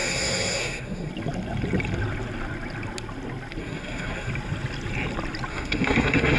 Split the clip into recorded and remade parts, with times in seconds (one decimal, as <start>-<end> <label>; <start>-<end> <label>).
0.0-1.1 remade; 1.1-3.6 recorded; 3.6-4.3 remade; 4.3-5.5 recorded; 5.5-6.4 remade

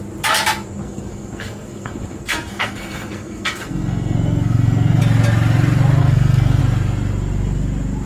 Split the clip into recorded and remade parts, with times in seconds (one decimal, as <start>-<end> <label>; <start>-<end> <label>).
0.0-0.8 recorded; 0.8-5.0 remade; 5.0-6.0 recorded; 6.0-6.6 remade; 6.6-8.1 recorded

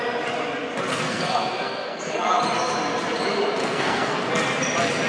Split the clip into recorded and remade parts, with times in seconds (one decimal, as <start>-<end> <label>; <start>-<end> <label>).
0.0-0.9 recorded; 0.9-2.4 remade; 2.4-3.6 recorded; 3.6-4.2 remade; 4.2-5.1 recorded

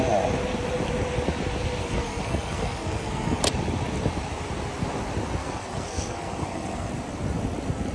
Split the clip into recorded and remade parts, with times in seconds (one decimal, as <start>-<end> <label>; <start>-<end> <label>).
0.0-1.8 recorded; 1.8-3.4 remade; 3.4-5.4 recorded; 5.4-6.9 remade; 6.9-7.9 recorded